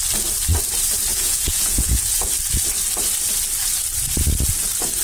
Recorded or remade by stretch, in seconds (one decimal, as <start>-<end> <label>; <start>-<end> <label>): 0.0-1.1 recorded; 1.1-2.3 remade; 2.3-5.0 recorded